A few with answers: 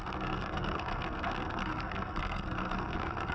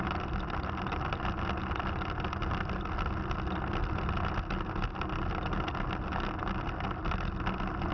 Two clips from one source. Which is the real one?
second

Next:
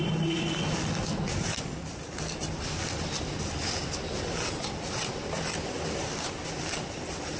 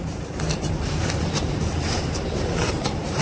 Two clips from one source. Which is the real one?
first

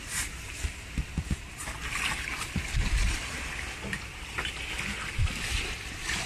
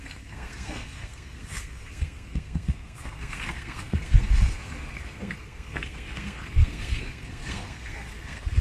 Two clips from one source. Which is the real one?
first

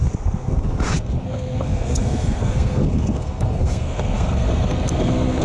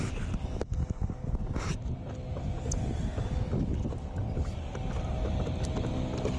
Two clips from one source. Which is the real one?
second